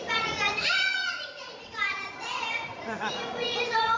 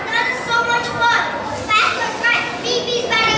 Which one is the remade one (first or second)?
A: first